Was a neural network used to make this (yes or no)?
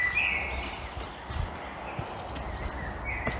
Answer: no